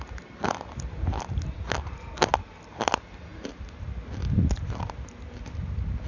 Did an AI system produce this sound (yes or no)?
no